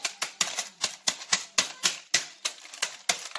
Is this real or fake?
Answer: real